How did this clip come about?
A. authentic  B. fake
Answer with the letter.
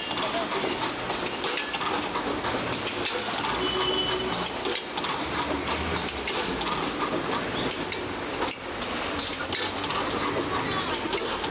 A